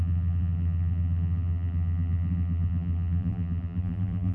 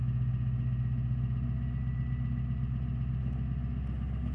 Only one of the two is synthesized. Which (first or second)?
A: first